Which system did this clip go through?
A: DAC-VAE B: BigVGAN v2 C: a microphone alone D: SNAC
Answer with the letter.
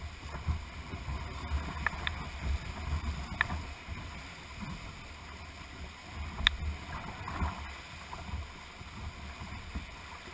C